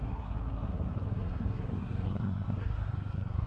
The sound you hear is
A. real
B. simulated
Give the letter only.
B